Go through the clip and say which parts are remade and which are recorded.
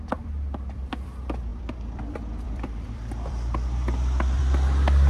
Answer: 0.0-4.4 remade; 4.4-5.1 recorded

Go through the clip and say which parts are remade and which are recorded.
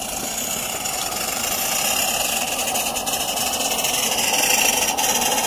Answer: 0.0-5.5 remade